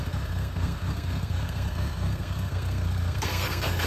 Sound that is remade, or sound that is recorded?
remade